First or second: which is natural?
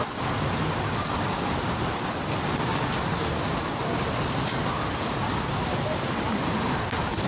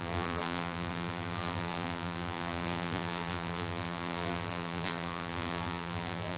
first